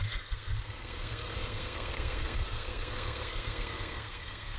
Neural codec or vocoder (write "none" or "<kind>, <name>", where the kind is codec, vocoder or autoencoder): codec, SNAC